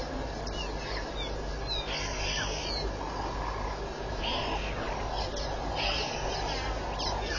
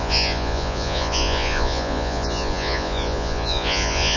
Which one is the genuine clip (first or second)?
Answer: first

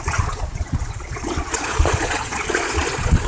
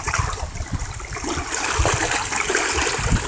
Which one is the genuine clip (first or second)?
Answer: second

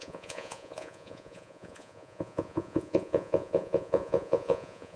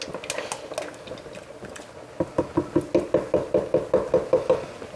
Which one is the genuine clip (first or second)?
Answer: second